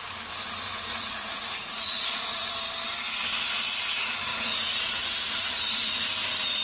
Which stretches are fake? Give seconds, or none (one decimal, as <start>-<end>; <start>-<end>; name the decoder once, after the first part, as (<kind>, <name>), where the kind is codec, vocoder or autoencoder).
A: 0.7-2.5 (vocoder, Vocos); 4.3-5.9